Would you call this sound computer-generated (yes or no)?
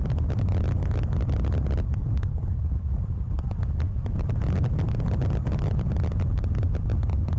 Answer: yes